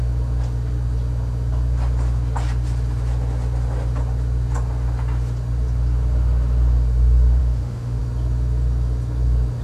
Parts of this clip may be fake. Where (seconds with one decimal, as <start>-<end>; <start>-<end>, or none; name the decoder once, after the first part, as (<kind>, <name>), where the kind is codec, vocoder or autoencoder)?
7.4-8.0 (autoencoder, DAC-VAE)